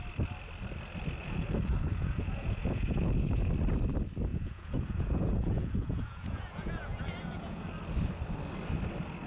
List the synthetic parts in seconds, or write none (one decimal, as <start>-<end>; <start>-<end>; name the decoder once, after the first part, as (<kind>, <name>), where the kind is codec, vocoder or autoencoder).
1.2-3.5 (vocoder, Vocos); 4.3-7.7